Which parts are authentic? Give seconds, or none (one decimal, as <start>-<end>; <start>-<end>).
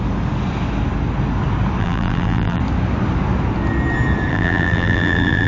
0.0-1.8; 2.6-4.3